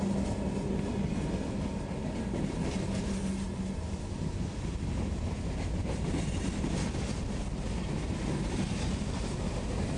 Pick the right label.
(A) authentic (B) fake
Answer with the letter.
A